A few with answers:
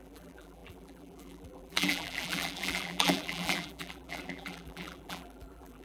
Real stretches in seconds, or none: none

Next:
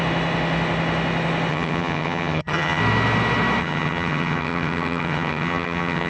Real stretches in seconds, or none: 0.0-1.5; 2.8-3.6